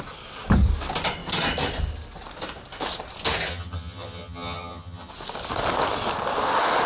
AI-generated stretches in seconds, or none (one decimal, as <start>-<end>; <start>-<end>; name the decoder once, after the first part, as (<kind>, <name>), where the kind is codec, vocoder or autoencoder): 3.5-5.1 (vocoder, HiFi-GAN)